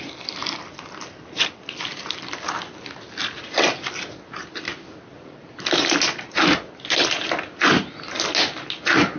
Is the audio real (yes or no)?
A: yes